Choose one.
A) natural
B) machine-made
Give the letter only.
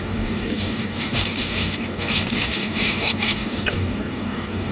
B